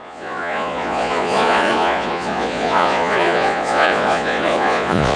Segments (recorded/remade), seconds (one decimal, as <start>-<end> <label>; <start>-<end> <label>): 0.0-5.2 remade